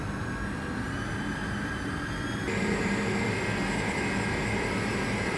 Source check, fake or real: real